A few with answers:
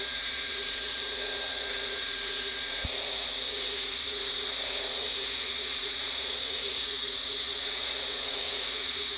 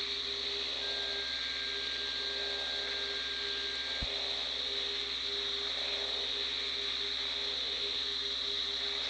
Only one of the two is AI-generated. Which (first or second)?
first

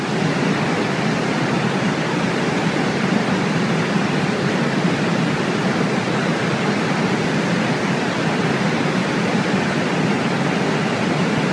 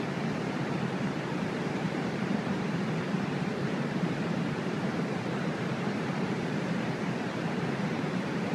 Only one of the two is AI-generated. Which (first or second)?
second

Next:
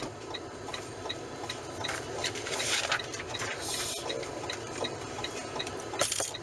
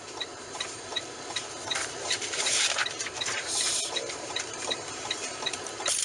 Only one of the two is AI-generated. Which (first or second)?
second